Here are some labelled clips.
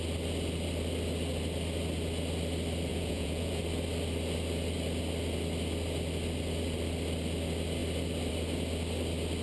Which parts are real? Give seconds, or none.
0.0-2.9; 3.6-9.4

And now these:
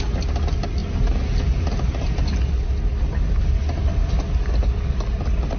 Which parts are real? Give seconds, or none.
0.0-5.6

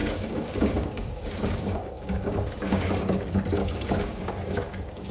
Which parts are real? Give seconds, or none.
2.9-3.6